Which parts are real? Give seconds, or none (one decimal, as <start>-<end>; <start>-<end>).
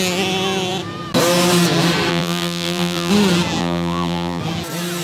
0.0-2.1; 3.1-3.6; 4.4-5.0